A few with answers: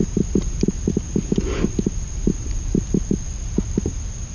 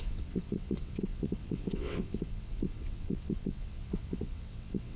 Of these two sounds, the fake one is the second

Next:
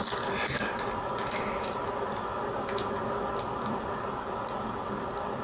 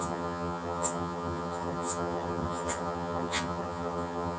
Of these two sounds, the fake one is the second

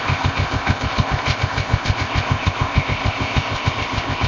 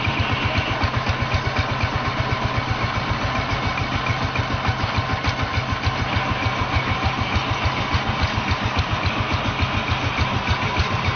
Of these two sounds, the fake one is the first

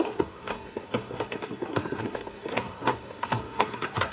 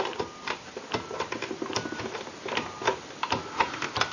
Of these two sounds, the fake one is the first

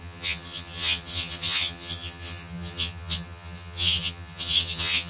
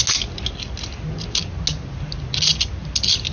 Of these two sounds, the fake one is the first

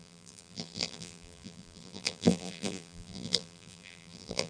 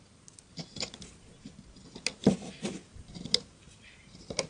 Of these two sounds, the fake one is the first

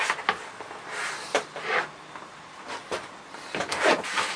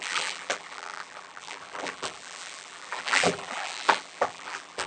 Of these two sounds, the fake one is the second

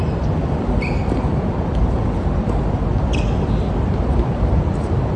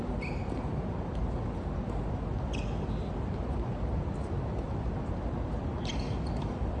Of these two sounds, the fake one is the first